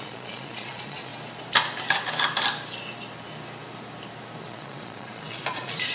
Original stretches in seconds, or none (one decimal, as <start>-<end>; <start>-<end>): 1.1-4.4